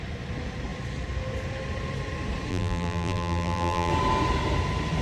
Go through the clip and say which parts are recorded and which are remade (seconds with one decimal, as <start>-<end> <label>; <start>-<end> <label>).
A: 0.0-2.5 recorded; 2.5-3.9 remade; 3.9-5.0 recorded